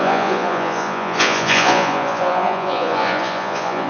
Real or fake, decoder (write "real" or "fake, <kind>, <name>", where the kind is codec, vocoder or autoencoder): fake, vocoder, Vocos